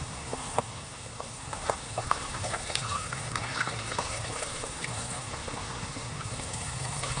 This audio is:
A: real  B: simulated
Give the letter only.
B